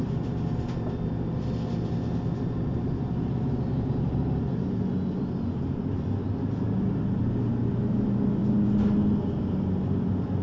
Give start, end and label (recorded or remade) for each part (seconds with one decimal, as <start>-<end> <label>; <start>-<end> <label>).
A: 0.0-10.4 recorded